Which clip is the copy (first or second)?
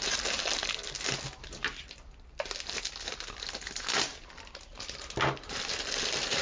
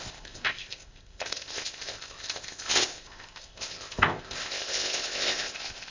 second